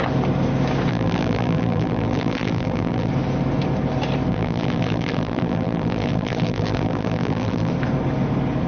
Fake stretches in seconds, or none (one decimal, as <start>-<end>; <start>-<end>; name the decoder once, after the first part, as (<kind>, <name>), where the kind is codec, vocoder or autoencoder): 0.9-3.1 (vocoder, BigVGAN v2); 4.3-7.7

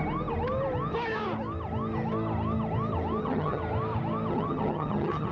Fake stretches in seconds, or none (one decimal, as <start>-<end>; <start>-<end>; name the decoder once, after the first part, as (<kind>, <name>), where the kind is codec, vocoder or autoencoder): 3.2-3.6 (vocoder, HiFi-GAN); 4.3-5.3

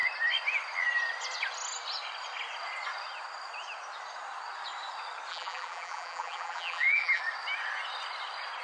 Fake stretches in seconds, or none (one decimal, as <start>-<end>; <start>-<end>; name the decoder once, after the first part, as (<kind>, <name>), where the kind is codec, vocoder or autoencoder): 5.3-7.2 (vocoder, BigVGAN v2)

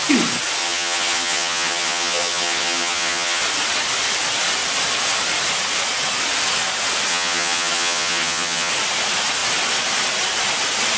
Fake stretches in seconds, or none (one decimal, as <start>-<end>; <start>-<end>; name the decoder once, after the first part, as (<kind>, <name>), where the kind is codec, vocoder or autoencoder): 0.6-3.4 (vocoder, HiFi-GAN); 7.1-8.7